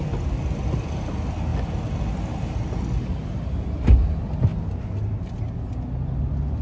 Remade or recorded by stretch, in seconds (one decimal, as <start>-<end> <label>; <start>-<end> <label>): 0.0-6.6 recorded